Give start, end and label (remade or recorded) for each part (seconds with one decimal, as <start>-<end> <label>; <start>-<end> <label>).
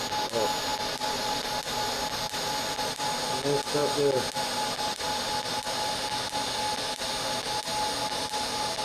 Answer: 0.0-8.8 recorded